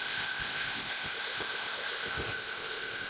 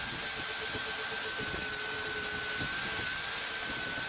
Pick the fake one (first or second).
first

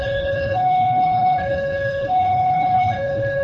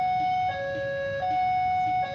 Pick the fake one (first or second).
first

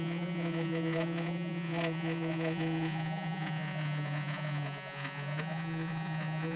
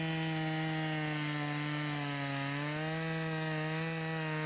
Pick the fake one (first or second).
first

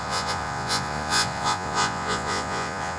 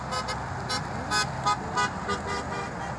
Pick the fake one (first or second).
first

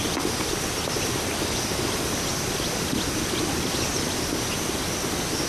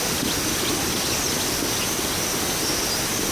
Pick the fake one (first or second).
first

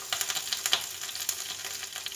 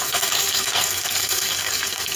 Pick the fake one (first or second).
second